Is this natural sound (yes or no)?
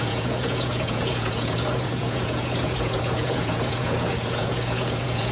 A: no